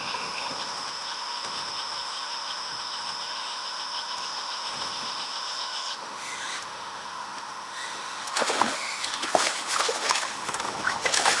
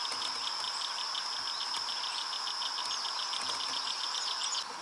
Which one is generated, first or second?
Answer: first